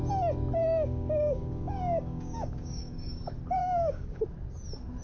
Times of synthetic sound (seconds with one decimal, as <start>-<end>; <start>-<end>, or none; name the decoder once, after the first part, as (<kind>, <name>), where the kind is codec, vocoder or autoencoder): 0.6-3.2 (codec, DAC); 3.6-4.2